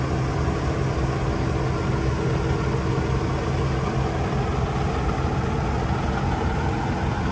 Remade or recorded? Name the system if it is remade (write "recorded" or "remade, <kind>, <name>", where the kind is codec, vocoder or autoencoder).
recorded